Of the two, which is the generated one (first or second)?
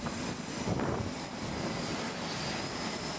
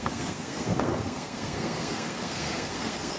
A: second